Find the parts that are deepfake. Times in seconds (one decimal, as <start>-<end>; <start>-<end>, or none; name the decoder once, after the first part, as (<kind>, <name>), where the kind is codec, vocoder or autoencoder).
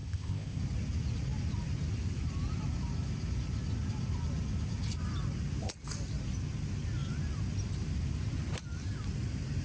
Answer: 0.0-0.6 (codec, ZipCodec)